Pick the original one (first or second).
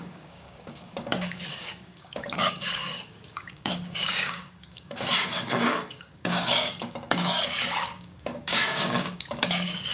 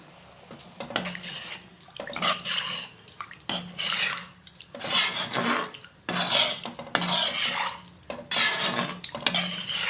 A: second